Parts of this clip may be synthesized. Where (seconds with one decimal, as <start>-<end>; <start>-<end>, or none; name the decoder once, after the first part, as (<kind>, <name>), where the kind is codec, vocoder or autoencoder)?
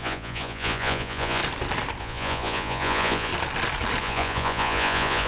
0.0-1.4 (vocoder, Vocos); 2.0-3.3; 4.0-5.3